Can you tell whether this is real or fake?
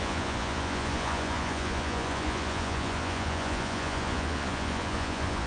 fake